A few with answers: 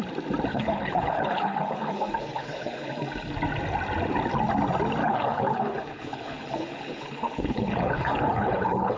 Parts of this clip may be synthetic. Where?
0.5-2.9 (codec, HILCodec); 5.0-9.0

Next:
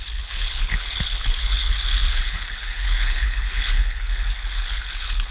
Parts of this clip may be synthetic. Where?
0.0-5.3 (codec, HILCodec)

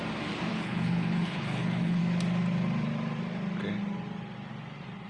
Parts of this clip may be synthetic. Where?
0.5-2.0 (codec, HILCodec)

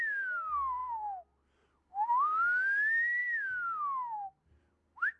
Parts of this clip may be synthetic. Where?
none

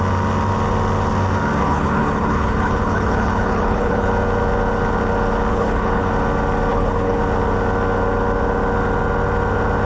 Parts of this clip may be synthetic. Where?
1.6-4.1 (codec, HILCodec); 5.5-6.1; 6.7-7.2

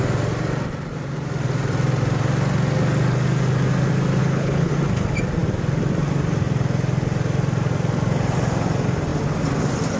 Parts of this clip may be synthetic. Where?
4.2-4.7 (codec, HILCodec)

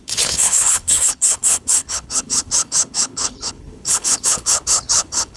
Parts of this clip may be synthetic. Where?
0.0-5.4 (codec, HILCodec)

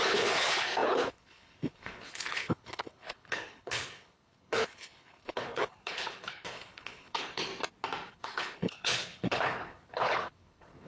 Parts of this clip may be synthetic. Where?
0.0-7.5 (codec, HILCodec); 8.1-10.9